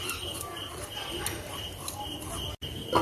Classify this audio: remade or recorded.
recorded